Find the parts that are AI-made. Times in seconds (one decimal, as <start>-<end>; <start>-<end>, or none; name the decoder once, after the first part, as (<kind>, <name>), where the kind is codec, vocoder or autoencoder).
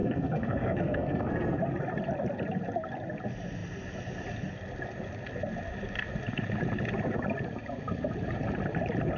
0.0-1.6 (codec, SNAC)